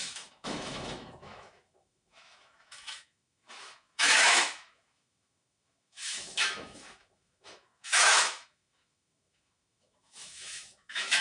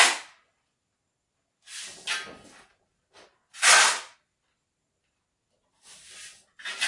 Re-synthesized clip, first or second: first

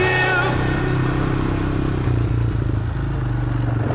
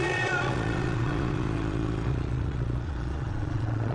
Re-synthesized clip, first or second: second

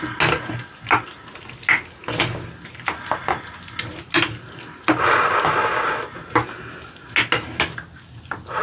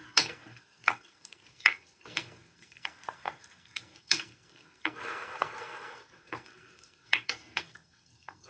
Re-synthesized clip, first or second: second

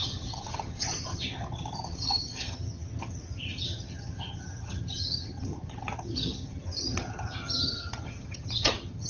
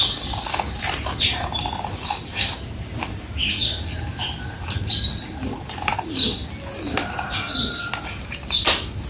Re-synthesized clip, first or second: first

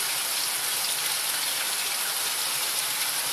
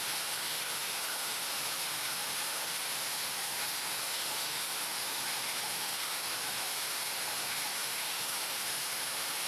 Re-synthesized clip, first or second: second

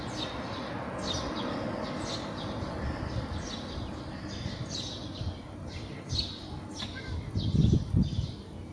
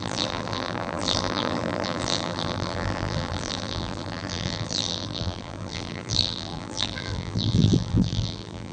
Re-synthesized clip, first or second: second